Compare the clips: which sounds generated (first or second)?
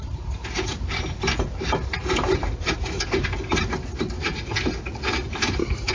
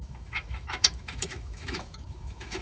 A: second